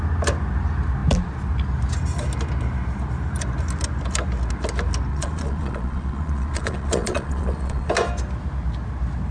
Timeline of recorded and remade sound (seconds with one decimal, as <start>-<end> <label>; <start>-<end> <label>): 0.0-5.1 recorded; 5.1-7.9 remade; 7.9-9.3 recorded